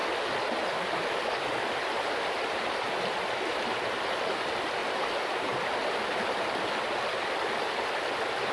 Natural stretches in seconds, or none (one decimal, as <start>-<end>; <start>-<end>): 0.0-8.5